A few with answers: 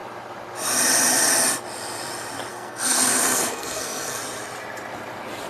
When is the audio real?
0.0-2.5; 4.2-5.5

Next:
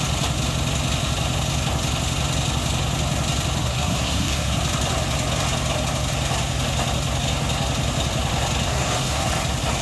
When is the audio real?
0.0-3.6; 4.6-8.7; 9.3-9.8

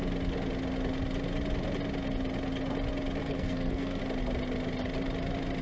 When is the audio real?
0.0-3.2; 4.0-5.6

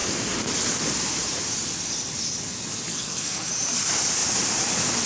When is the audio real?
0.0-2.9; 3.5-5.1

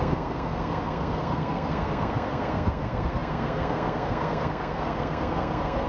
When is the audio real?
none

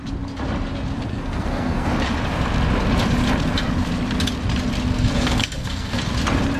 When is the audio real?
0.0-1.1; 1.9-4.9; 6.0-6.6

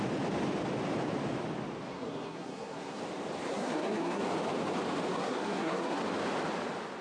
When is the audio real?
0.0-1.9; 3.0-3.5; 4.2-5.1; 6.0-7.0